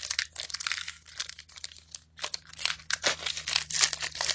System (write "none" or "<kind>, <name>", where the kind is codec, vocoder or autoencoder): none